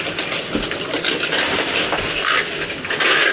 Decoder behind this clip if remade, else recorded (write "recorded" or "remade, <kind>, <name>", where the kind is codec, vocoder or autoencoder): recorded